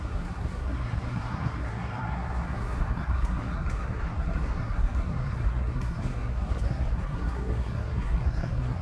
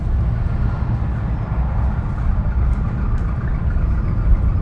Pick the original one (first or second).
second